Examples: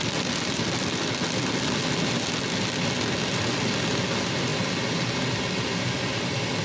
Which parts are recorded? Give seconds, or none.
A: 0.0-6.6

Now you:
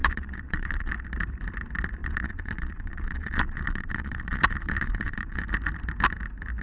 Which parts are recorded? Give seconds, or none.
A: 0.9-2.0; 5.4-6.6

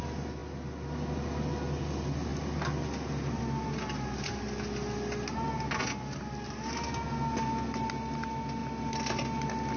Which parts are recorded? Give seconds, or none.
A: 0.0-9.8